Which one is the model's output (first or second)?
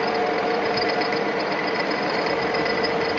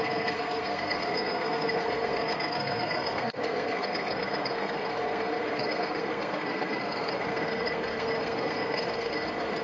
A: second